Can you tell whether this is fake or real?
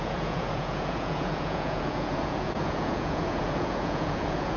fake